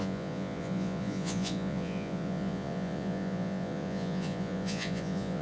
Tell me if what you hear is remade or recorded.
remade